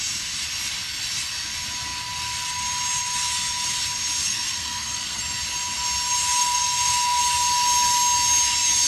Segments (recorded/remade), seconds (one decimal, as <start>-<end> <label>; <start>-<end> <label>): 0.0-4.2 recorded; 4.2-5.2 remade; 5.2-6.4 recorded; 6.4-7.2 remade; 7.2-8.9 recorded